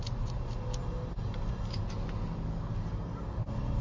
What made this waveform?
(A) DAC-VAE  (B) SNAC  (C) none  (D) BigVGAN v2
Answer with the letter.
C